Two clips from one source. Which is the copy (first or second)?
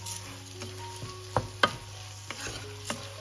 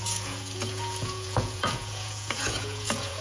second